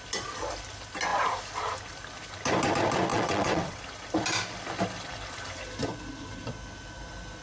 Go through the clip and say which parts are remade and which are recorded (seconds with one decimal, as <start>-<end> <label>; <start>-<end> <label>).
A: 0.0-3.1 recorded; 3.1-3.8 remade; 3.8-7.4 recorded